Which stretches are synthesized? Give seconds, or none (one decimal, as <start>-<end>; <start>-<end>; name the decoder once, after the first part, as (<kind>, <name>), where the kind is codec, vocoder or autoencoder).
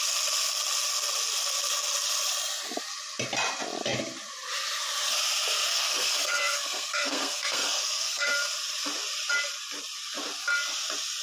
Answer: 5.7-8.3 (codec, SNAC)